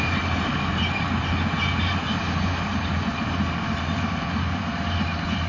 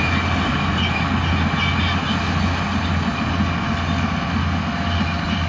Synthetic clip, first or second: first